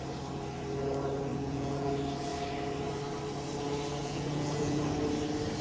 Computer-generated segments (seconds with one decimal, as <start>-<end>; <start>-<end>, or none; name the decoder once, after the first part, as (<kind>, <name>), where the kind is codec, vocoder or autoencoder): 1.3-1.9 (vocoder, Vocos); 4.0-4.8